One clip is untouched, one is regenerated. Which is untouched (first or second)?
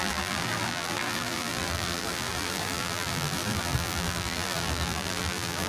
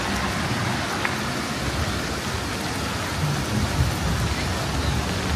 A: second